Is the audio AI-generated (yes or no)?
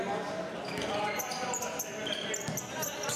no